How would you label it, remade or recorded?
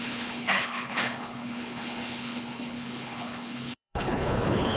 remade